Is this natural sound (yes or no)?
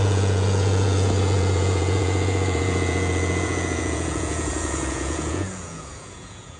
no